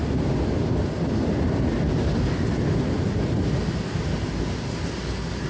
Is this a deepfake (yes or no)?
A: no